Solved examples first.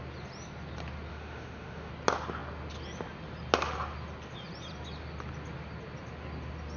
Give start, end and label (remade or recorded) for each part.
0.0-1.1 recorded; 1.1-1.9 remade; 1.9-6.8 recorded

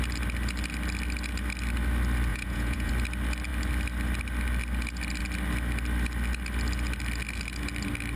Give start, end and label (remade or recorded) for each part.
0.0-2.3 recorded; 2.3-2.9 remade; 2.9-8.2 recorded